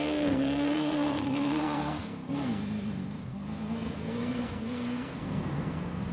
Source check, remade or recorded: remade